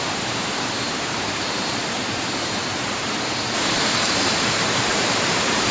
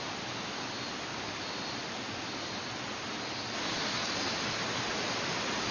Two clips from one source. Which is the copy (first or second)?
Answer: first